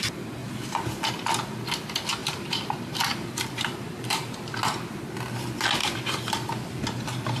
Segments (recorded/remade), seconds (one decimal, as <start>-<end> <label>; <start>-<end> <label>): 0.0-0.4 recorded; 0.4-1.1 remade; 1.1-2.2 recorded; 2.2-4.6 remade; 4.6-5.8 recorded; 5.8-7.4 remade